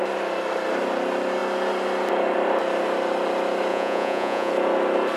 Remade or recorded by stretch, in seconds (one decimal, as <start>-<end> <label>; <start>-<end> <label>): 0.0-3.7 recorded; 3.7-4.5 remade; 4.5-5.2 recorded